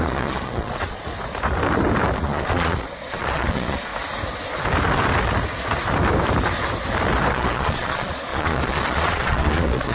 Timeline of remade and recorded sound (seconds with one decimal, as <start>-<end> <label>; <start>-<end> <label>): 0.0-1.1 remade; 1.1-2.2 recorded; 2.2-3.9 remade; 3.9-7.3 recorded; 7.3-9.9 remade